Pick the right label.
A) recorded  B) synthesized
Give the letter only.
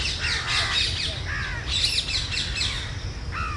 A